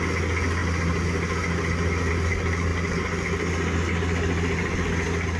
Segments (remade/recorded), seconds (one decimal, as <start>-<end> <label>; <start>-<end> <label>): 0.0-5.4 recorded